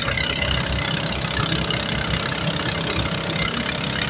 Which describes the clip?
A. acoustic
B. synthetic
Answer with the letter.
A